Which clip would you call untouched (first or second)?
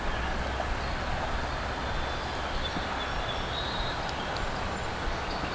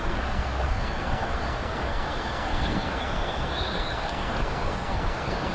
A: first